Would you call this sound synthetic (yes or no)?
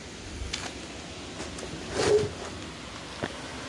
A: no